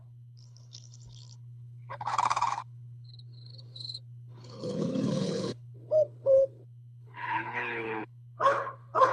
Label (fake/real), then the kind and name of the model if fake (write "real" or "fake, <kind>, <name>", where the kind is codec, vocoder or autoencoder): fake, codec, HILCodec